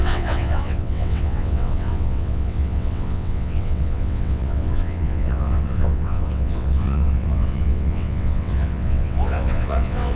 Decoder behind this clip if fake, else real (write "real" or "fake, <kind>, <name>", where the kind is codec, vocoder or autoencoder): fake, vocoder, WaveNeXt